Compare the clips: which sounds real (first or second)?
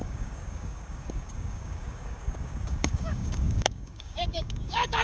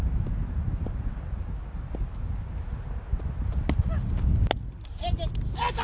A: second